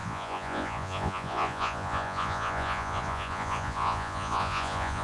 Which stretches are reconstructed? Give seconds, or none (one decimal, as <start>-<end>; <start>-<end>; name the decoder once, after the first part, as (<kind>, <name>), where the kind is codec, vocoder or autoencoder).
0.0-5.0 (vocoder, Vocos)